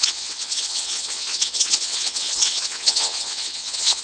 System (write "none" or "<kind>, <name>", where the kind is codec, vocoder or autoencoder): vocoder, WaveNeXt